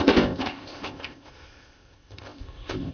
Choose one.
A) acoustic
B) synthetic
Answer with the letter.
B